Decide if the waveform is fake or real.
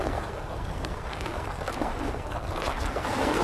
fake